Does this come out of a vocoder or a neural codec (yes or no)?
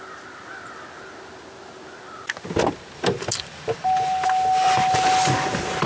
no